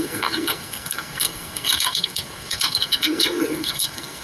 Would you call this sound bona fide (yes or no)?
no